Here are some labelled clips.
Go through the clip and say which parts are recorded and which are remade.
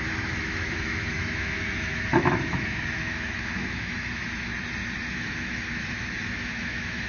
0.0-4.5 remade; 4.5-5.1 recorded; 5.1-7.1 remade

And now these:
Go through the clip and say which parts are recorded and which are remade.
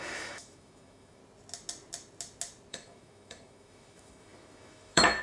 0.0-1.2 remade; 1.2-2.7 recorded; 2.7-5.2 remade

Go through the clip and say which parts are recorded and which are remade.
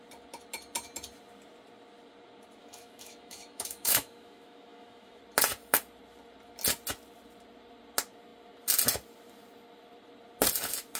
0.0-2.6 recorded; 2.6-5.2 remade; 5.2-11.0 recorded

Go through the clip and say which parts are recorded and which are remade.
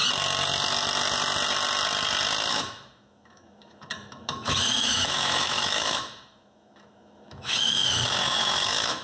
0.0-2.5 recorded; 2.5-9.0 remade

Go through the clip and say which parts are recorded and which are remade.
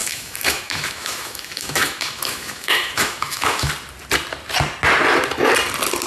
0.0-3.7 remade; 3.7-6.1 recorded